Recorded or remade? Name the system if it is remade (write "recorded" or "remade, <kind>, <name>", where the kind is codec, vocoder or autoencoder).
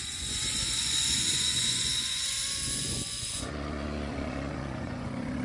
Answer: remade, vocoder, Vocos